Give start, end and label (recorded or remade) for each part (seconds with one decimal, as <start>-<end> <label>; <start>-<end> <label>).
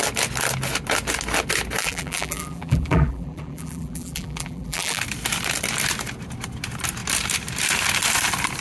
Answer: 0.0-1.8 recorded; 1.8-5.0 remade; 5.0-8.6 recorded